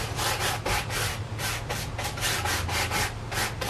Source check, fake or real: real